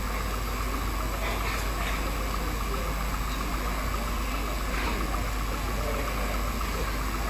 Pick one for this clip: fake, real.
real